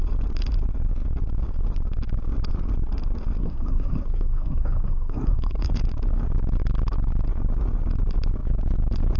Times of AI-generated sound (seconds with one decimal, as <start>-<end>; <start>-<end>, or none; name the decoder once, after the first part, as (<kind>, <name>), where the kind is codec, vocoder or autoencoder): 3.4-5.7 (codec, SNAC)